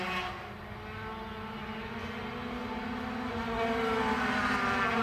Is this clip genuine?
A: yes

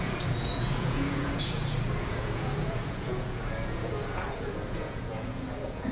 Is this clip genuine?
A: no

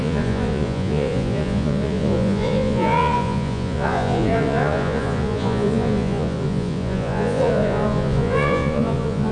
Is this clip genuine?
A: no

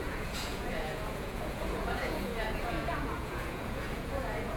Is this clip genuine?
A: no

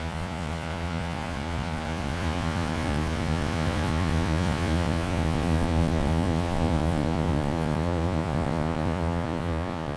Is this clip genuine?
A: no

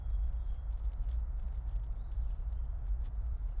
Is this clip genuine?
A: yes